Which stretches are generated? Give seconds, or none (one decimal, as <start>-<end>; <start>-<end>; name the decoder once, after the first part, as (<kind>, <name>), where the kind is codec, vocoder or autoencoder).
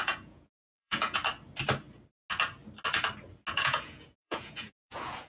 0.0-1.2 (vocoder, Vocos); 3.5-5.3